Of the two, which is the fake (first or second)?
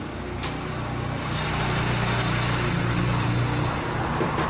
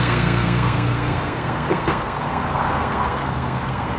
second